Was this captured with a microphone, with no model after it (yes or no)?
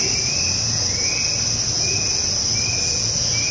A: yes